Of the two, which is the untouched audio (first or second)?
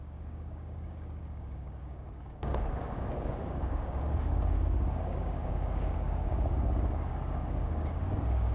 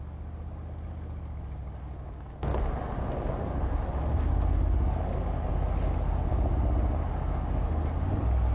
second